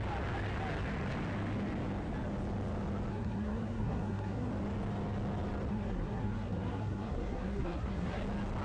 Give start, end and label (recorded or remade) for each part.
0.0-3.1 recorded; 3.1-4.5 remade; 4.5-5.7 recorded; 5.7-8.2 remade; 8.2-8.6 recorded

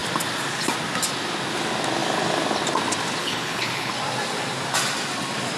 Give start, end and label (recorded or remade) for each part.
0.0-3.2 recorded; 3.2-3.9 remade; 3.9-5.6 recorded